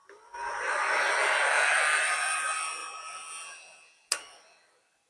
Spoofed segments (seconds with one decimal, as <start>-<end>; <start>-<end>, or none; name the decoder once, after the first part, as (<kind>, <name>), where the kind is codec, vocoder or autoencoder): none